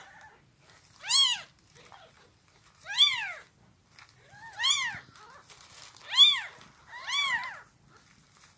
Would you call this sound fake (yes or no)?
no